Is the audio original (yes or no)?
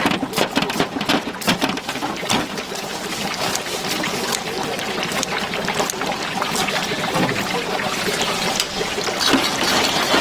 yes